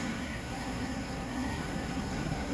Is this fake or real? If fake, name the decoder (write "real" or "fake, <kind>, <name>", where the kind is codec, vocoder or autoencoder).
fake, codec, SNAC